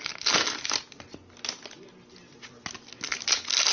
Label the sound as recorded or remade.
recorded